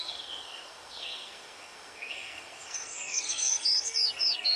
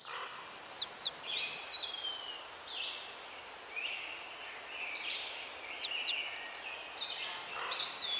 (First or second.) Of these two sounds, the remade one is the first